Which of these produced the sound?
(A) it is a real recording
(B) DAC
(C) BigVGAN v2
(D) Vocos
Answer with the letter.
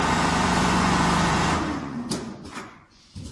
D